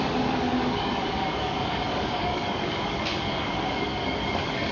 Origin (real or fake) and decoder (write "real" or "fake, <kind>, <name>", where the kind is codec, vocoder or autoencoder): fake, codec, DAC